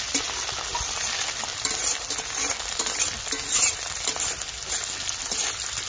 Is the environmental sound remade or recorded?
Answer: recorded